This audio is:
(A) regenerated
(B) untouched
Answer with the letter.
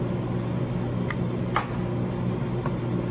B